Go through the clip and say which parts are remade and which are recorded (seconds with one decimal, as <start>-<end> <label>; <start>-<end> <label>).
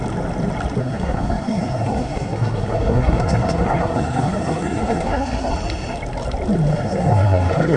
0.0-0.8 recorded; 0.8-5.5 remade; 5.5-6.7 recorded; 6.7-7.8 remade